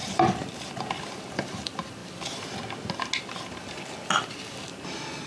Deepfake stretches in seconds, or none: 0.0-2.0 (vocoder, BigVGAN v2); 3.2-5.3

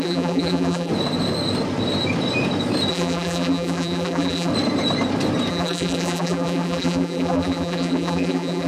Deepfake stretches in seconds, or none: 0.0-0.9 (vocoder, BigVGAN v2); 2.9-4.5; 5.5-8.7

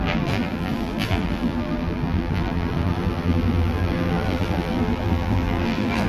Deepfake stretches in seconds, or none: 0.0-6.1 (vocoder, BigVGAN v2)

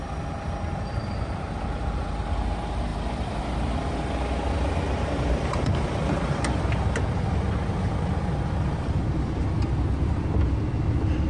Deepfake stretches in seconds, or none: none

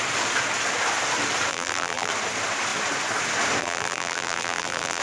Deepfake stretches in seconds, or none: 1.5-2.1 (vocoder, BigVGAN v2); 3.6-5.0

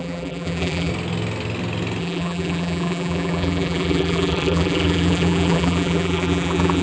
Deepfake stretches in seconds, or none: 0.0-0.9 (vocoder, BigVGAN v2); 2.0-6.8

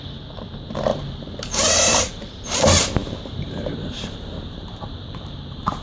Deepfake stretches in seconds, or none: 0.0-5.8 (vocoder, BigVGAN v2)

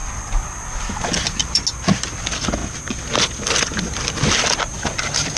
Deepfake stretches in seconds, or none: none